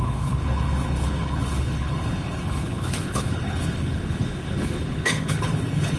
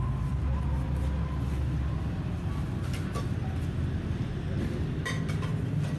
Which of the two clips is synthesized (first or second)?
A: first